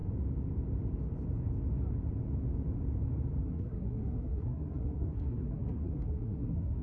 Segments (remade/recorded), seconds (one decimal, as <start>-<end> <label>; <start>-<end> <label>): 0.0-3.4 recorded; 3.4-6.8 remade